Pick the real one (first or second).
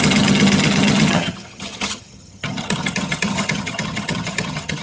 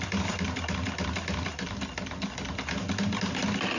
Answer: second